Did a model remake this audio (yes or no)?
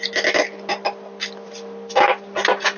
no